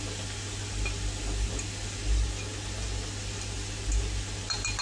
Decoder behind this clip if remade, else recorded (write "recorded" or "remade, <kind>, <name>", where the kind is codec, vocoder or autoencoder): recorded